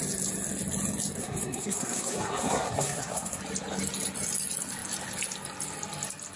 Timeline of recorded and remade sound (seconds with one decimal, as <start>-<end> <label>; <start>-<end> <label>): 0.0-1.2 recorded; 1.2-3.4 remade; 3.4-6.4 recorded